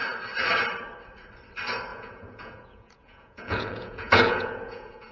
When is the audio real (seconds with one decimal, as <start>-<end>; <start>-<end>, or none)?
0.0-1.9

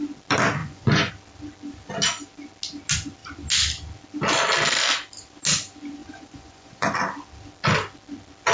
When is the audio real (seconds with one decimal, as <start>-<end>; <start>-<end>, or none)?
0.0-0.6; 1.1-6.0; 7.0-8.5

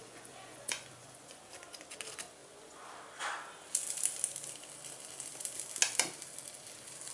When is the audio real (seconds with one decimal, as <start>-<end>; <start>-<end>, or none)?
1.4-2.4; 2.9-7.1

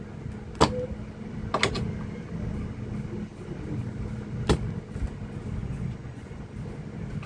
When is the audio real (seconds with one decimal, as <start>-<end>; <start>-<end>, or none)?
0.0-5.6; 6.4-7.3

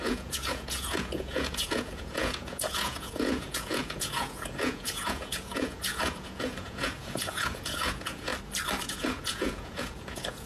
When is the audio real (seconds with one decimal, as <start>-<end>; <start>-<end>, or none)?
8.3-8.8